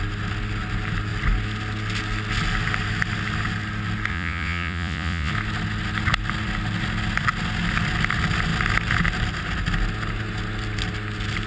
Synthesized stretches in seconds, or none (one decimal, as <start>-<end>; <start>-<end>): 4.1-5.3